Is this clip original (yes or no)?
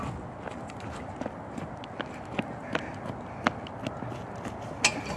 yes